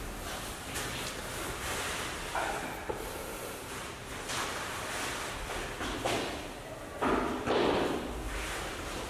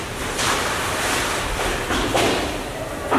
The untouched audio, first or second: first